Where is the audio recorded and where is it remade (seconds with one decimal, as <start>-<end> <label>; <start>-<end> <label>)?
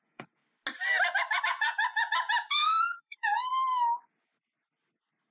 0.0-0.4 remade; 0.4-1.4 recorded; 1.4-3.5 remade; 3.5-5.3 recorded